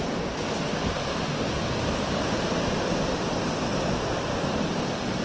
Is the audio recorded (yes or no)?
yes